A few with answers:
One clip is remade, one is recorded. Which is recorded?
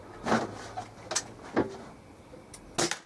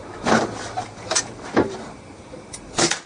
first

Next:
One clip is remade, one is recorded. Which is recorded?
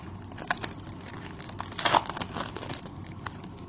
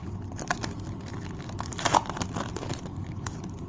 first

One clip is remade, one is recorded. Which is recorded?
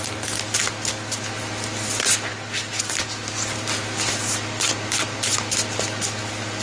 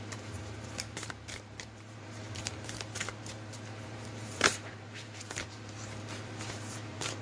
first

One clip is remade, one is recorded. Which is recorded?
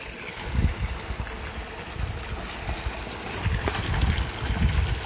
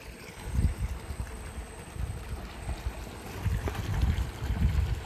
first